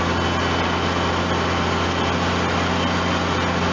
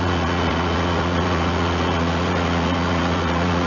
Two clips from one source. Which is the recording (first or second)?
first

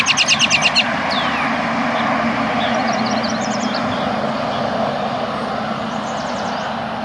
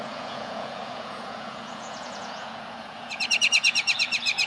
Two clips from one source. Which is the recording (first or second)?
first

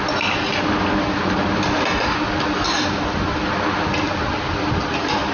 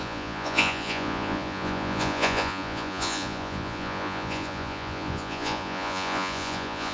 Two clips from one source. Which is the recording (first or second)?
first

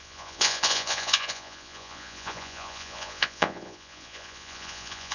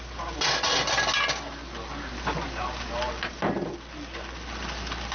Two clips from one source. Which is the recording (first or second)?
second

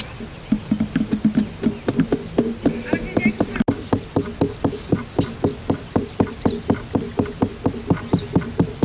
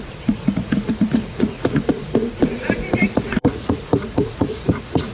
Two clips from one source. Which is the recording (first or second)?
first